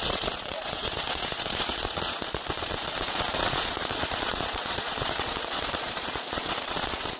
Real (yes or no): no